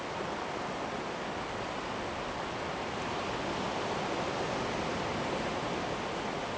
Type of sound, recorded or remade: recorded